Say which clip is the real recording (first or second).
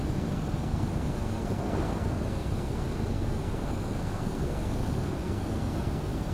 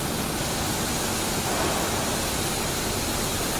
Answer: second